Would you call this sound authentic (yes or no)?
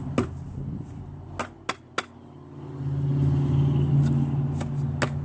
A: yes